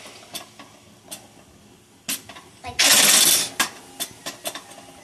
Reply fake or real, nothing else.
real